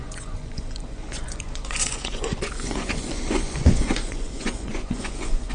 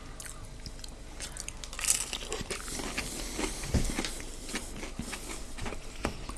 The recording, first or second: second